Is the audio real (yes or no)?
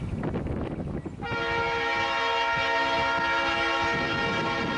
yes